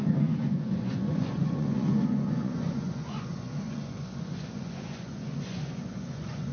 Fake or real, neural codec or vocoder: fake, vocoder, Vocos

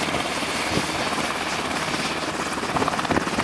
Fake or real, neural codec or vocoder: real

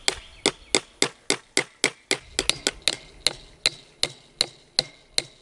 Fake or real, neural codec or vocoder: real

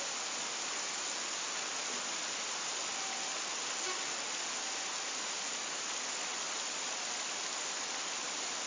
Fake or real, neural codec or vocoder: real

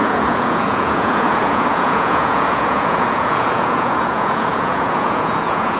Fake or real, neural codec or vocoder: fake, vocoder, Vocos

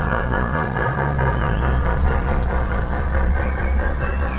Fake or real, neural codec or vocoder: fake, vocoder, Vocos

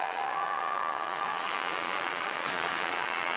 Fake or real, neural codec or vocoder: fake, vocoder, Vocos